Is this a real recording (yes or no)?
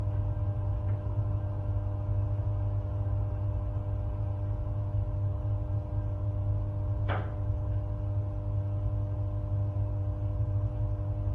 yes